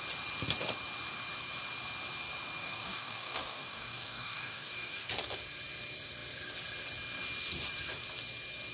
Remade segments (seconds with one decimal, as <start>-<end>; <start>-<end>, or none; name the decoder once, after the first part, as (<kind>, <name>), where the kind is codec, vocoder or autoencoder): 2.6-5.1 (codec, DAC)